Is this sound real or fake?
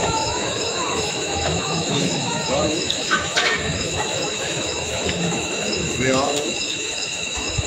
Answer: fake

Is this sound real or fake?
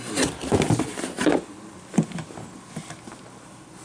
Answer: real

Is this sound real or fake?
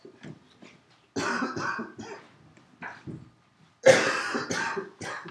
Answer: real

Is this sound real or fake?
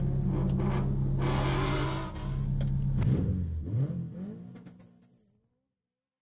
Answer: real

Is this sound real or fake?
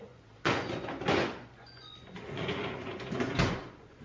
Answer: fake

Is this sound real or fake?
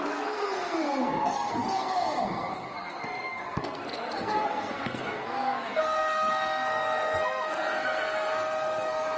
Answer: fake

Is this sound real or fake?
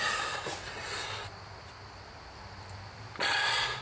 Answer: real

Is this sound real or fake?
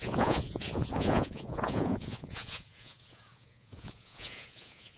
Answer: fake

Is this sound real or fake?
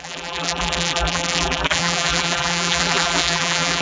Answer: fake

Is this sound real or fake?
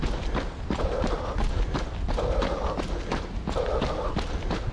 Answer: real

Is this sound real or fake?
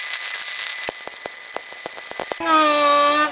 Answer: real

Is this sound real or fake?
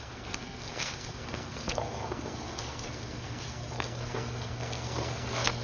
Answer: fake